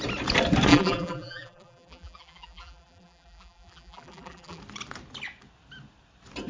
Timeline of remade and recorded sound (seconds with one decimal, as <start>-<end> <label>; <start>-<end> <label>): 0.0-0.7 recorded; 0.7-4.6 remade; 4.6-6.5 recorded